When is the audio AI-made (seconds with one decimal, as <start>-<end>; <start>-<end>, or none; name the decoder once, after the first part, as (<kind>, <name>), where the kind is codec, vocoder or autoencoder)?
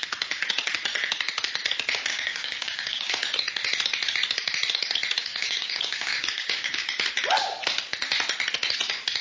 2.1-3.1 (codec, DAC); 5.2-6.9